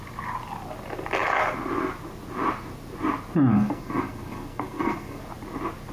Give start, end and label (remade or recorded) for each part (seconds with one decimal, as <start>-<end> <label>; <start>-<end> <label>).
0.0-3.5 recorded; 3.5-5.2 remade; 5.2-5.9 recorded